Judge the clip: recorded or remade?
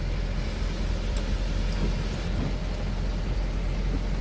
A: recorded